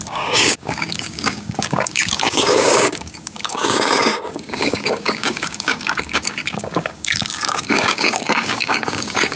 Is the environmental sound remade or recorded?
remade